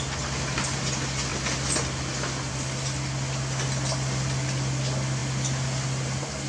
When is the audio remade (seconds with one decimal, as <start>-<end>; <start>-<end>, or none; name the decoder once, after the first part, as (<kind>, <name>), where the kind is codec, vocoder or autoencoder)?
none